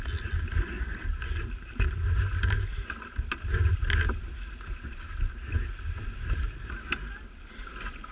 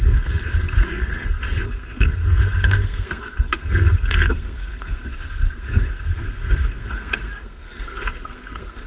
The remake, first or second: second